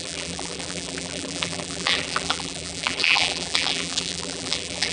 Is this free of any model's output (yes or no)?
no